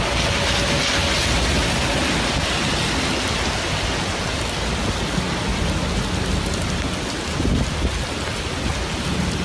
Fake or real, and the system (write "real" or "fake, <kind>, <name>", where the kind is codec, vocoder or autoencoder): real